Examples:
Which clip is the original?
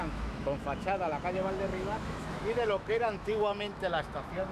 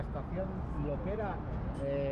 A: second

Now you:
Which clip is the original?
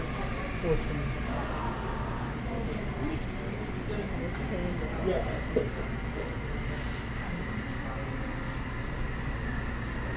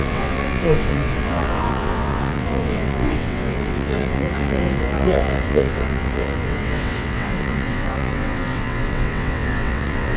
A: first